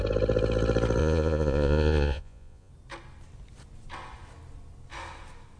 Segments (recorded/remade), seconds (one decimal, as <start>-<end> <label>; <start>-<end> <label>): 0.0-1.0 recorded; 1.0-2.7 remade; 2.7-5.6 recorded